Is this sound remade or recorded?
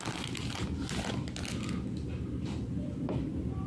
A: recorded